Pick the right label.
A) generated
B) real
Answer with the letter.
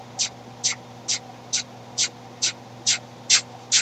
B